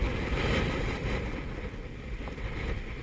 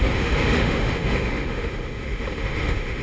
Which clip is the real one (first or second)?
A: first